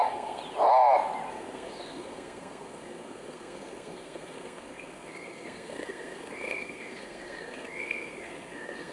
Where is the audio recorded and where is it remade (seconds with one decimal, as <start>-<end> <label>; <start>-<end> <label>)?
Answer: 0.0-0.4 remade; 0.4-1.3 recorded; 1.3-8.9 remade